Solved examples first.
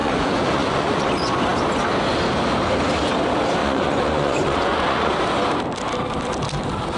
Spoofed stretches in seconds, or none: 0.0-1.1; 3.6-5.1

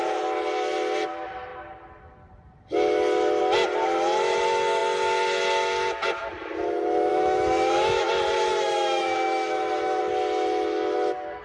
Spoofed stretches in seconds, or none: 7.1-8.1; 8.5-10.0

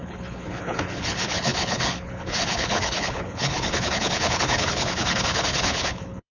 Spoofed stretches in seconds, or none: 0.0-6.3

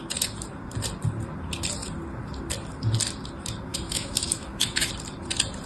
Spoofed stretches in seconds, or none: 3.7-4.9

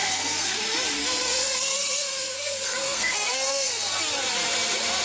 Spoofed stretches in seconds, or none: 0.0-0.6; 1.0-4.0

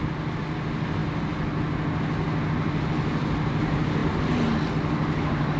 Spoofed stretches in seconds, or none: none

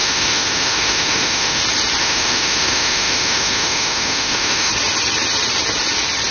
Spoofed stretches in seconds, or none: 0.0-1.6; 2.0-4.7

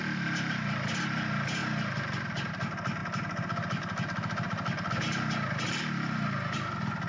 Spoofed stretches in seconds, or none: none